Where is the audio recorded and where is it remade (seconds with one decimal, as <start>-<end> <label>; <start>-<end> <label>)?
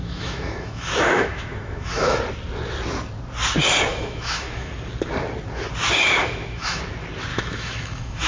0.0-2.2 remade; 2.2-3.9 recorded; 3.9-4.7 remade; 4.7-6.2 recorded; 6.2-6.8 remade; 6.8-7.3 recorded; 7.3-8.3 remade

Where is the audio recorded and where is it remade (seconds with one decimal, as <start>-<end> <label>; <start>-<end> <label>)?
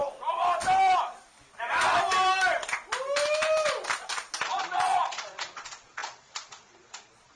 0.0-4.4 recorded; 4.4-7.4 remade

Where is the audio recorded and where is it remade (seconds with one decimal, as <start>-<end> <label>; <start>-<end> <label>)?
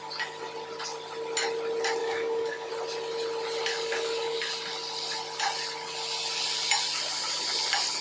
0.0-2.0 recorded; 2.0-2.7 remade; 2.7-3.7 recorded; 3.7-4.4 remade; 4.4-8.0 recorded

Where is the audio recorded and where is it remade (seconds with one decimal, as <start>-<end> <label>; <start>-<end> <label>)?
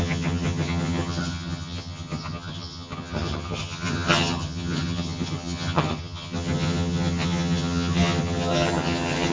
0.0-9.3 remade